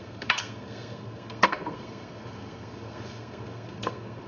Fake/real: fake